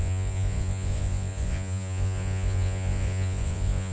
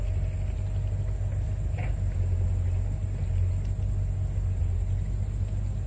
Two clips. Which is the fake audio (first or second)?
first